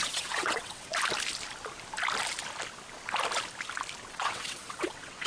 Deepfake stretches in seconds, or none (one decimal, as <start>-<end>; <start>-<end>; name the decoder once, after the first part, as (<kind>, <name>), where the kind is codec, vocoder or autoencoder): 0.0-0.9 (vocoder, WaveNeXt); 4.1-5.3